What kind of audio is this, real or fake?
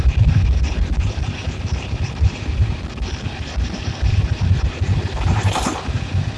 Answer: fake